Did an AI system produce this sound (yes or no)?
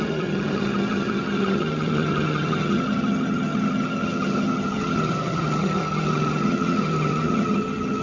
yes